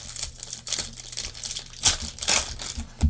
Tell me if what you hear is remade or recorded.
recorded